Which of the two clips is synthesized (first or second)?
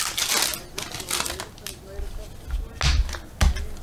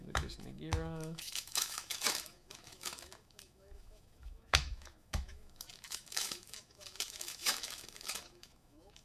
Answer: second